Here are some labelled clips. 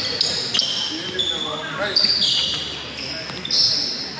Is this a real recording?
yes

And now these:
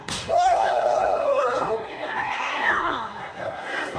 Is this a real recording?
no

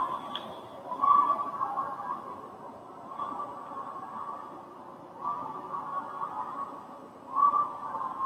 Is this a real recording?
yes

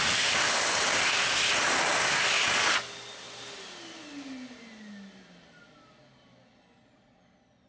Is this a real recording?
yes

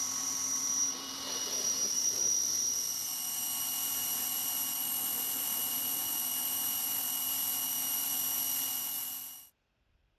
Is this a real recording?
no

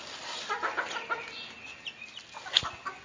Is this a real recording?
yes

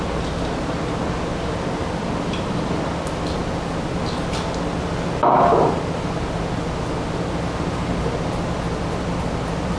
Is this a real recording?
yes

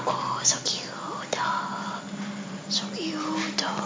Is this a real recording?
yes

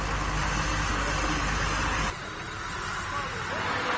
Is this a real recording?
yes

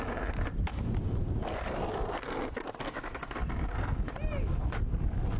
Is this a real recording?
yes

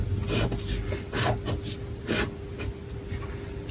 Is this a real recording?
yes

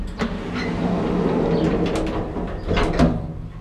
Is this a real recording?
yes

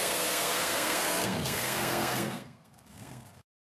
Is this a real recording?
no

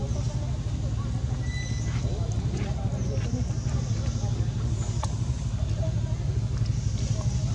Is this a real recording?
yes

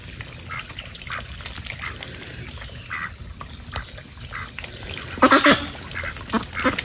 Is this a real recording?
yes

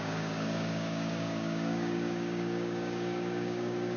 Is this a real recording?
no